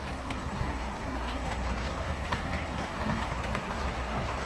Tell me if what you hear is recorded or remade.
remade